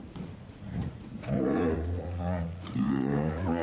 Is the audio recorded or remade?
remade